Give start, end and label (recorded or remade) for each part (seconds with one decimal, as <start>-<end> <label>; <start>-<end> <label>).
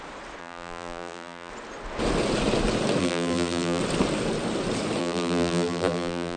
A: 0.0-0.4 recorded; 0.4-1.5 remade; 1.5-3.0 recorded; 3.0-3.8 remade; 3.8-5.0 recorded; 5.0-6.4 remade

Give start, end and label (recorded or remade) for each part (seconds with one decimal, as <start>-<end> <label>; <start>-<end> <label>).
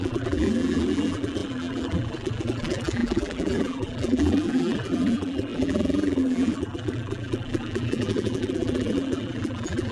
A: 0.0-9.9 remade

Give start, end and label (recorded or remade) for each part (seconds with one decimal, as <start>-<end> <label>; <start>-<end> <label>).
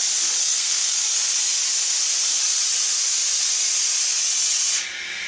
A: 0.0-0.4 recorded; 0.4-1.0 remade; 1.0-5.3 recorded